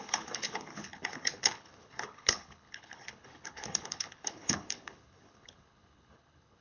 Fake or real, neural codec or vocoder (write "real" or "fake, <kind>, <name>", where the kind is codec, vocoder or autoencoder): fake, codec, HILCodec